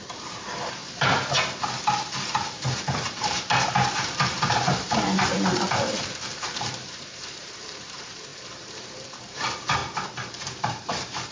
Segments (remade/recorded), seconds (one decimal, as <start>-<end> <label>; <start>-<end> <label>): 0.0-0.8 remade; 0.8-2.8 recorded; 2.8-9.8 remade; 9.8-10.3 recorded; 10.3-11.3 remade